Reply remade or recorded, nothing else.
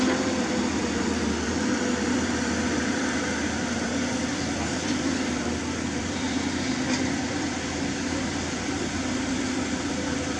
remade